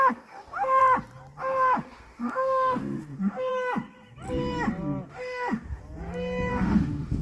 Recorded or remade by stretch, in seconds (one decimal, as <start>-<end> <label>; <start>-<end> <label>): 0.0-0.8 remade; 0.8-1.4 recorded; 1.4-3.5 remade; 3.5-5.1 recorded; 5.1-5.8 remade; 5.8-6.5 recorded; 6.5-7.2 remade